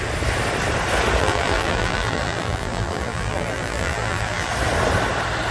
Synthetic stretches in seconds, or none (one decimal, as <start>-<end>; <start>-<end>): 1.2-4.5